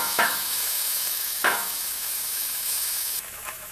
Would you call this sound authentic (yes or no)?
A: no